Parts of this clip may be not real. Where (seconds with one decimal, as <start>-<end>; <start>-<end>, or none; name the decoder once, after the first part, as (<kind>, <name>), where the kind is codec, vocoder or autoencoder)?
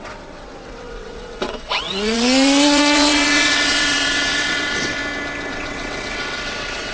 0.0-5.0 (vocoder, WaveNeXt); 5.5-6.9